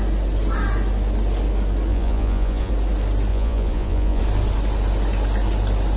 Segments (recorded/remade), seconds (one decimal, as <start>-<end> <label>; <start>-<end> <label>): 0.0-1.9 recorded; 1.9-2.7 remade; 2.7-3.3 recorded; 3.3-4.2 remade; 4.2-6.0 recorded

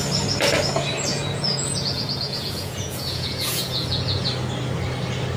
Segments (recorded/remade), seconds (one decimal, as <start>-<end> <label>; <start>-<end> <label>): 0.0-1.1 recorded; 1.1-4.3 remade; 4.3-5.4 recorded